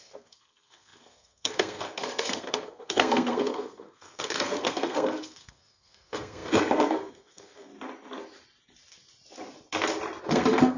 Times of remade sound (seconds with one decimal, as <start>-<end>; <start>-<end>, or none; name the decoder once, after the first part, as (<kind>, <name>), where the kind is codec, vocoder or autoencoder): 0.0-7.7 (codec, SNAC); 10.2-10.8